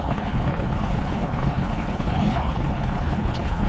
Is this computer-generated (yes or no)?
yes